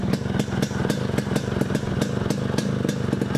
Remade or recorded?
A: recorded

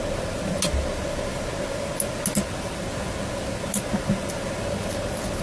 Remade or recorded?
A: recorded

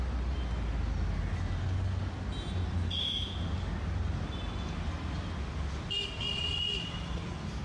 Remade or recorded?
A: recorded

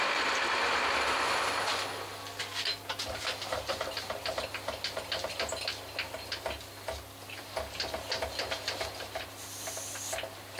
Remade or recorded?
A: recorded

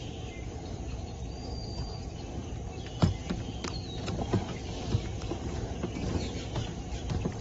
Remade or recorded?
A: remade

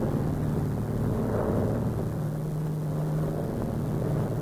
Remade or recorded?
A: recorded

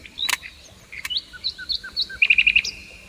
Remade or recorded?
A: remade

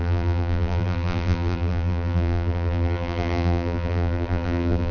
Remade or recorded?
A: remade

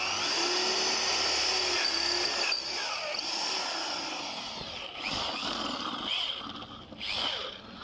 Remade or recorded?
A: recorded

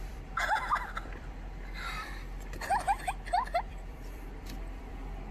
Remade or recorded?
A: remade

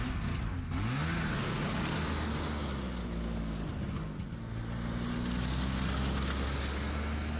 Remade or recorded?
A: recorded